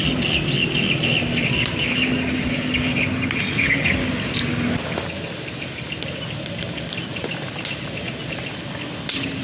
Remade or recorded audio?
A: recorded